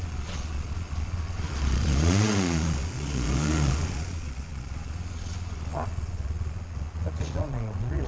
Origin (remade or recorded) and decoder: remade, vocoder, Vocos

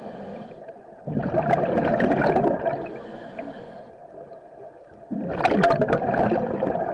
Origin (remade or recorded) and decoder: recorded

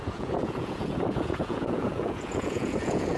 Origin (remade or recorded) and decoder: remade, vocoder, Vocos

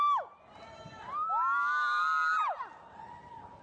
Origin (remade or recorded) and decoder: recorded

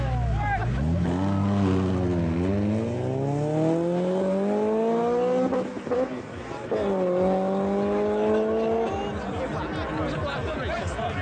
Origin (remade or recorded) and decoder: recorded